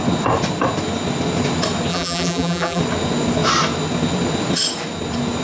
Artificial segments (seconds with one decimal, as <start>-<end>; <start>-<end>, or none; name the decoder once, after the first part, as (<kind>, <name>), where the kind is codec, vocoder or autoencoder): 1.9-2.8 (vocoder, BigVGAN v2)